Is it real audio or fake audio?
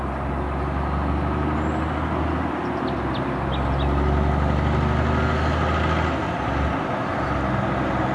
real